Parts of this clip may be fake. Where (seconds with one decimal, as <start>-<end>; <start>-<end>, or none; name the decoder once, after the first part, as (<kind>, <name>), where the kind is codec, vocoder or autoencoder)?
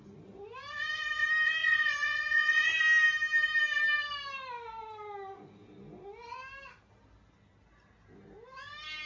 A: 1.6-2.8 (vocoder, Vocos)